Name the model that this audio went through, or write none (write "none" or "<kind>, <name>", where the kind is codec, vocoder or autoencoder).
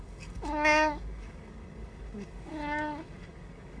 codec, DAC